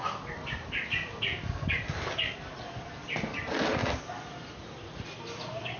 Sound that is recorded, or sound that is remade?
recorded